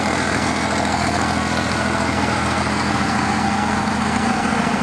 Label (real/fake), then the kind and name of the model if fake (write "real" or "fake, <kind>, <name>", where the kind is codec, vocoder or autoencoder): fake, codec, SNAC